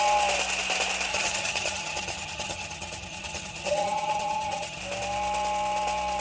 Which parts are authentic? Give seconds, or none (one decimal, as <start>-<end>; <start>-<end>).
0.0-1.1; 4.8-6.2